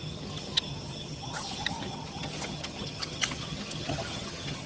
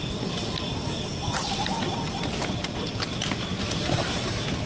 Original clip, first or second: second